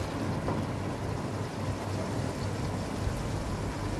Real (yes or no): yes